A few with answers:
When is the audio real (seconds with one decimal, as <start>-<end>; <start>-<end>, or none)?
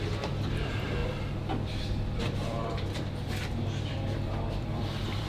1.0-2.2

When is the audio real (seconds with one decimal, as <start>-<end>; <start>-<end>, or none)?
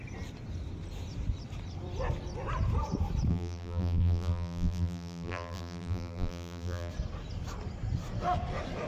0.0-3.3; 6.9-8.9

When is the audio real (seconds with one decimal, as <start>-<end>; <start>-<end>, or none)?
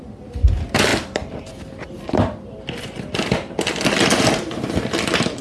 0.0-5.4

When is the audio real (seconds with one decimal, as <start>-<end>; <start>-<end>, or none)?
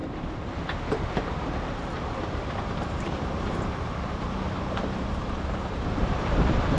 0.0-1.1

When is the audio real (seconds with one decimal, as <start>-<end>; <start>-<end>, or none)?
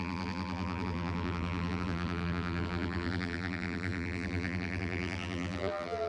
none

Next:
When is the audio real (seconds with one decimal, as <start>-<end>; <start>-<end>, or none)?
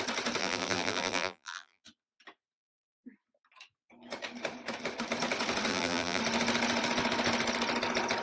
0.0-0.4; 1.8-5.7; 6.2-8.2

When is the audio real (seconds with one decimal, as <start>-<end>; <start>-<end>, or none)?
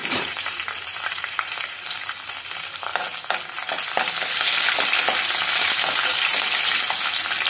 2.9-7.5